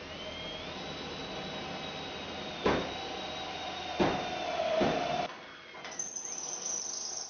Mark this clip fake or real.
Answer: real